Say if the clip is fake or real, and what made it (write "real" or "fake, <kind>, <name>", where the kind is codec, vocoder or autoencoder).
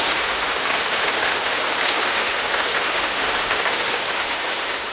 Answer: fake, autoencoder, DAC-VAE